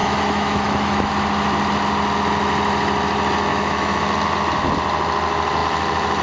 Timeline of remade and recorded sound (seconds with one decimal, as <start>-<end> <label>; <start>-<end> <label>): 0.0-1.1 remade; 1.1-3.5 recorded; 3.5-4.0 remade; 4.0-6.2 recorded